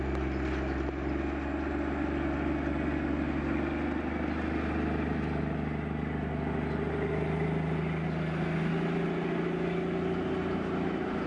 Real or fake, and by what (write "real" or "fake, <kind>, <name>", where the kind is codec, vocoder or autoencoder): real